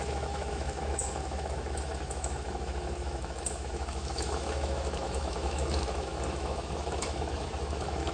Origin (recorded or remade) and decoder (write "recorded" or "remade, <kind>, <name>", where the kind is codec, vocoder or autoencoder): remade, autoencoder, DAC-VAE